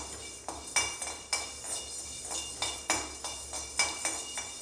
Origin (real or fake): real